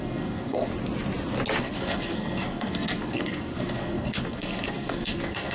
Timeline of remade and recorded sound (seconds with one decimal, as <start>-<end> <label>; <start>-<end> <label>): 0.0-0.7 remade; 0.7-1.6 recorded; 1.6-5.5 remade